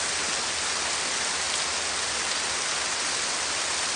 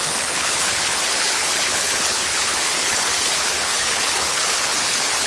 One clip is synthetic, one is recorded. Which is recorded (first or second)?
first